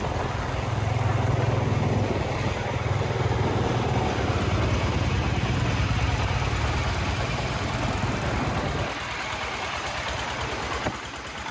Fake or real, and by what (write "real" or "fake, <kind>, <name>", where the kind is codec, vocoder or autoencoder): real